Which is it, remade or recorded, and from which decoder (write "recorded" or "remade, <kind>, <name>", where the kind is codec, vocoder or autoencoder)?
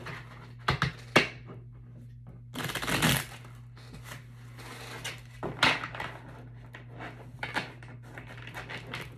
recorded